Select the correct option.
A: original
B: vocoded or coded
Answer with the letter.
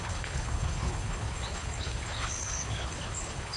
B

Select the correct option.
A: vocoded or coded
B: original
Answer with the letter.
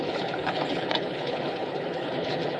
A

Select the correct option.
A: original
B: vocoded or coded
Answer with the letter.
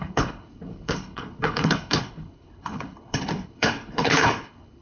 B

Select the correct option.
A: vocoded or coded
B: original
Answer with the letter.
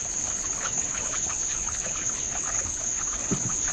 A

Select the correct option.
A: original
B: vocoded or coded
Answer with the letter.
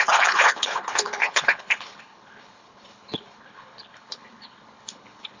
B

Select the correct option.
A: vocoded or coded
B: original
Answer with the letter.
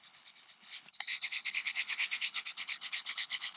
A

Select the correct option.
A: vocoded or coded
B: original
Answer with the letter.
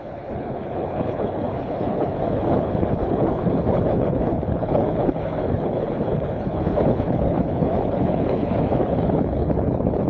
A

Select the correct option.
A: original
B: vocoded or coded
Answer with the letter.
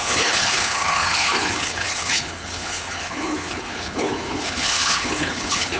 B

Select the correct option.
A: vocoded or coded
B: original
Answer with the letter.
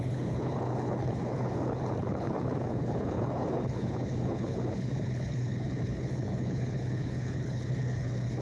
A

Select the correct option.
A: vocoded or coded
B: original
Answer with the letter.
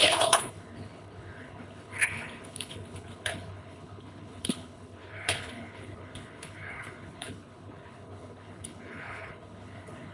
A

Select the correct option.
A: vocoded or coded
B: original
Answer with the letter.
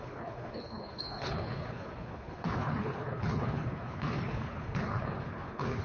A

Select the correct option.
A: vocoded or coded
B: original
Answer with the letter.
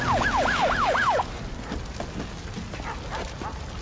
B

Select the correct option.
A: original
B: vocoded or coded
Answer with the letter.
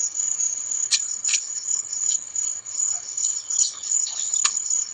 B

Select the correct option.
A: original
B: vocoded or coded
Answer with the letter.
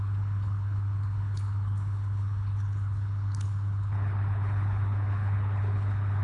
B